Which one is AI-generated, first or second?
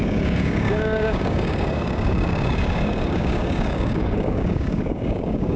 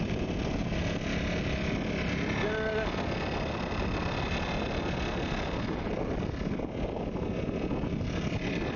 first